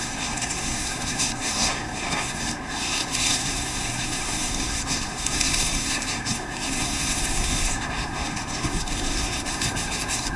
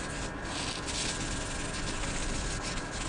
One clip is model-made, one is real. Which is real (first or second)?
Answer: second